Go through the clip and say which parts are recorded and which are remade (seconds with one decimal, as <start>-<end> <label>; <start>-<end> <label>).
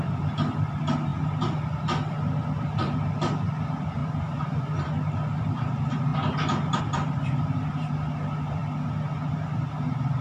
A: 0.0-1.1 remade; 1.1-2.1 recorded; 2.1-6.1 remade; 6.1-6.8 recorded; 6.8-8.6 remade; 8.6-9.3 recorded; 9.3-10.2 remade